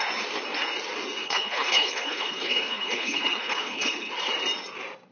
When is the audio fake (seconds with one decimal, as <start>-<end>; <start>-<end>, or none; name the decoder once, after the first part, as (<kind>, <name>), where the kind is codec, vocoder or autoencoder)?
1.2-4.1 (codec, HILCodec)